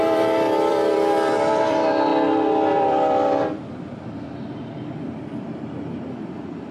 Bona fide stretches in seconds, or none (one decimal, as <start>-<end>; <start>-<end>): 2.1-2.7

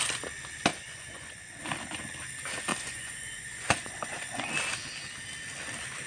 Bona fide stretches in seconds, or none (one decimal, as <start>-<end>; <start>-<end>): 0.0-0.7; 1.6-2.7; 4.5-6.1

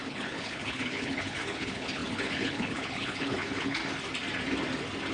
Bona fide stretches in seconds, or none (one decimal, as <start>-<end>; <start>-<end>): 3.8-5.1

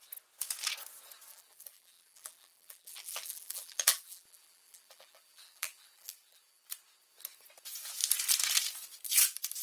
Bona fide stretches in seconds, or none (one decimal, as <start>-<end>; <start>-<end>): 0.0-1.3; 6.6-9.6